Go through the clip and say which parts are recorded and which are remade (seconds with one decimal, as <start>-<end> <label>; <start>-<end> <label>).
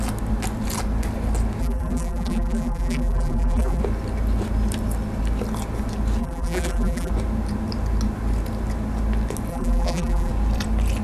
0.0-1.6 recorded; 1.6-3.8 remade; 3.8-6.2 recorded; 6.2-7.1 remade; 7.1-9.5 recorded; 9.5-10.3 remade; 10.3-11.0 recorded